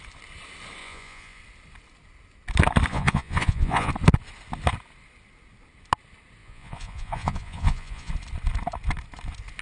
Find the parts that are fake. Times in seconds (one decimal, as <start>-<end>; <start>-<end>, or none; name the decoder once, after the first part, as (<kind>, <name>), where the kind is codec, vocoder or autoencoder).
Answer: 0.8-1.4 (vocoder, Vocos); 2.9-3.9; 6.4-8.1